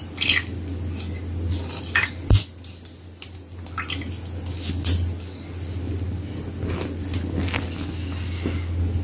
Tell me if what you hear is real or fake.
real